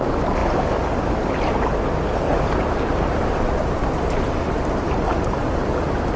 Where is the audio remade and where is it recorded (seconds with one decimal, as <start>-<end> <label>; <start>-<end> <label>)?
0.0-6.2 recorded